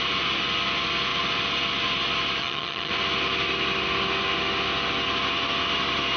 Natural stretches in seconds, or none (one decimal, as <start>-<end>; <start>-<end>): 0.0-2.4; 2.9-6.2